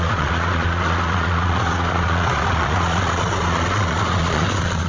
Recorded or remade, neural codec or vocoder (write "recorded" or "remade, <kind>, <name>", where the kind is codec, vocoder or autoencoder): remade, vocoder, Vocos